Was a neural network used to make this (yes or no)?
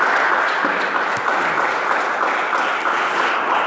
no